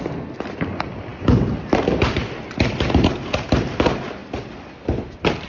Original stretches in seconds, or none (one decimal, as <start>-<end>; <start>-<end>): 0.0-5.5